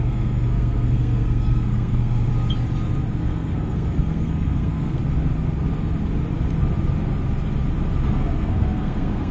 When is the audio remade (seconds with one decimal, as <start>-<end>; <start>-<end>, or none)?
0.0-2.3; 3.2-5.0; 8.1-9.3